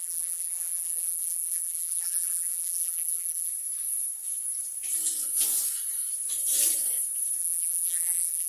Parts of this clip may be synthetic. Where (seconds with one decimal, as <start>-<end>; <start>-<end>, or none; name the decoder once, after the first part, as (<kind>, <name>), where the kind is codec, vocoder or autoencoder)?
0.0-3.5 (vocoder, BigVGAN v2); 7.4-8.5